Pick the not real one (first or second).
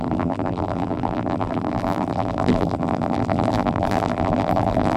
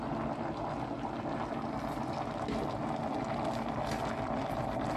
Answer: first